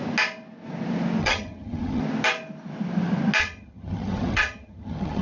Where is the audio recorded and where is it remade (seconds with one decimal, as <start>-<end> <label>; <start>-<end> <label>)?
0.0-1.2 recorded; 1.2-2.0 remade; 2.0-3.4 recorded; 3.4-5.2 remade